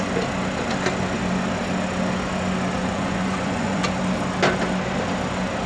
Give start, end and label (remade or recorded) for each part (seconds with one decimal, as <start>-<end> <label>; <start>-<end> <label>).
0.0-2.8 recorded; 2.8-3.8 remade; 3.8-5.7 recorded